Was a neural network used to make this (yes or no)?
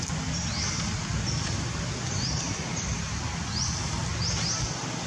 no